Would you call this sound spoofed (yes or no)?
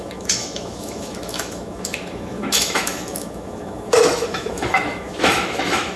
yes